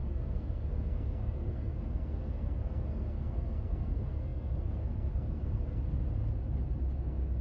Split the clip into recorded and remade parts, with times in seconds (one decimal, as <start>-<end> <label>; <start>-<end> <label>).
0.0-5.8 remade; 5.8-7.0 recorded; 7.0-7.4 remade